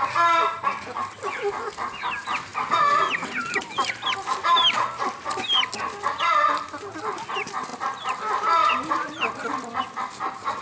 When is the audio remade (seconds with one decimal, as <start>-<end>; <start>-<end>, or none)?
none

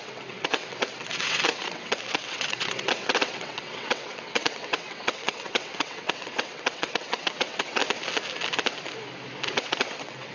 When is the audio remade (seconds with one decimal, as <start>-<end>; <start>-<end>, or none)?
0.0-7.8; 9.5-10.3

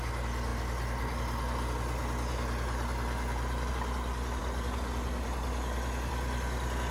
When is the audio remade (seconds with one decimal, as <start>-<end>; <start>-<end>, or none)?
none

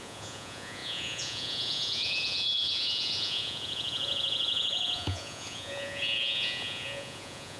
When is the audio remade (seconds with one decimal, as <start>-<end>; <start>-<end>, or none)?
0.0-7.6